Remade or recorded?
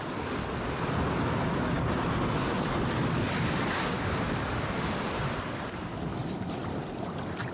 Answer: recorded